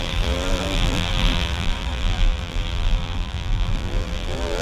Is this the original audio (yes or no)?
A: no